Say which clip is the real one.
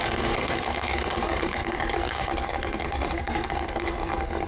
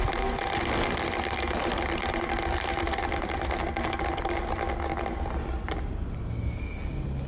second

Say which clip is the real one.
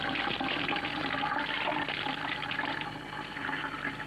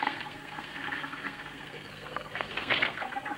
first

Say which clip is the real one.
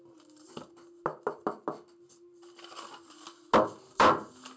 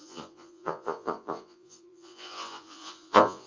first